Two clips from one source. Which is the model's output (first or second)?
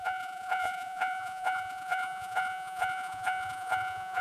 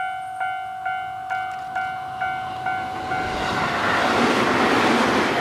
first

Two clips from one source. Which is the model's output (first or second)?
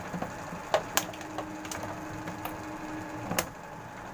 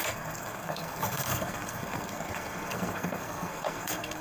second